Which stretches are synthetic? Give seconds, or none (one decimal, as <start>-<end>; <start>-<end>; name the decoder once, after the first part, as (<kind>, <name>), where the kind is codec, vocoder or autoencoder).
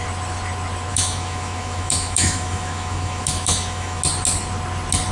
0.9-4.0 (autoencoder, DAC-VAE)